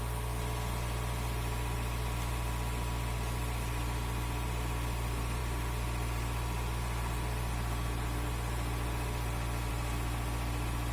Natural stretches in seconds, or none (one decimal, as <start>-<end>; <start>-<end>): 0.0-10.9